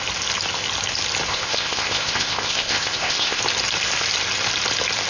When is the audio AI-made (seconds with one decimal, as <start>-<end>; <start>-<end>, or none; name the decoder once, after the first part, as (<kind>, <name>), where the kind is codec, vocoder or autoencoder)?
1.3-3.4 (codec, ZipCodec)